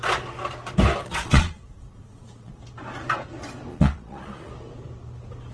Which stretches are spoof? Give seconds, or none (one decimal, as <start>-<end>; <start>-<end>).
1.0-2.6; 3.7-4.5